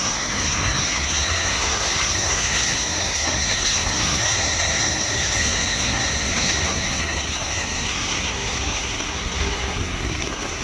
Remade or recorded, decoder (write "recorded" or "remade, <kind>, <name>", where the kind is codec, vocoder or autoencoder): remade, codec, SNAC